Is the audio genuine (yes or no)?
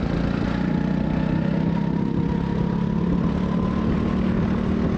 yes